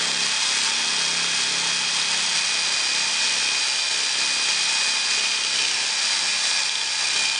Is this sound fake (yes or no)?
no